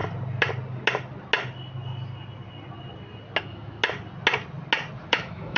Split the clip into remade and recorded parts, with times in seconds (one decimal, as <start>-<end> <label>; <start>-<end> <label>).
0.0-3.4 recorded; 3.4-3.8 remade; 3.8-5.1 recorded; 5.1-5.6 remade